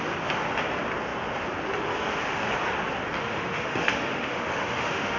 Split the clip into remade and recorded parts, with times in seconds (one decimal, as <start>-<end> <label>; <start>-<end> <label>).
0.0-3.2 recorded; 3.2-5.2 remade